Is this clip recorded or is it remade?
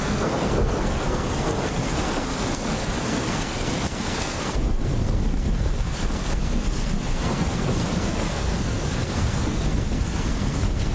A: remade